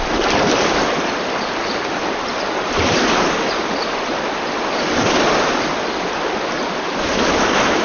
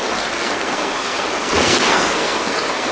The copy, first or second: second